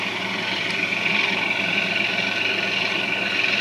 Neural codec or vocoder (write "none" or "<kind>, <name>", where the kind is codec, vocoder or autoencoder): none